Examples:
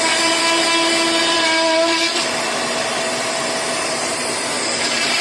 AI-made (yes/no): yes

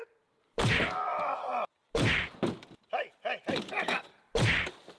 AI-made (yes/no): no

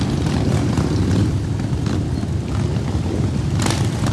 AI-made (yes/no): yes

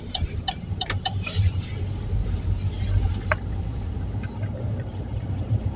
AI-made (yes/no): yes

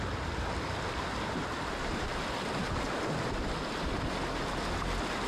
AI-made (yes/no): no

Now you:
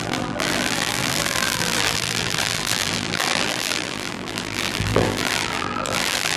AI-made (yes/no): yes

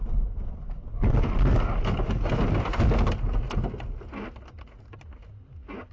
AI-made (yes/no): no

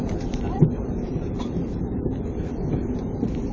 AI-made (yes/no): yes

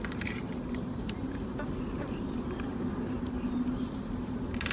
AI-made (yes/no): yes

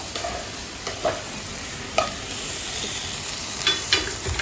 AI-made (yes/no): yes